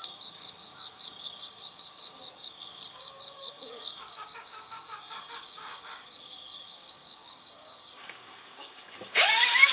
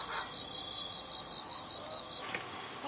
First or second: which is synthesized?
first